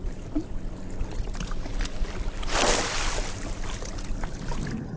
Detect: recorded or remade remade